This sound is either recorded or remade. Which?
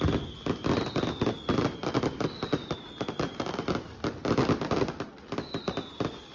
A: recorded